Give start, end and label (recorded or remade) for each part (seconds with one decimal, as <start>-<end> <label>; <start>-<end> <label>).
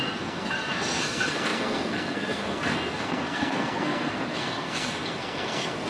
0.0-5.9 remade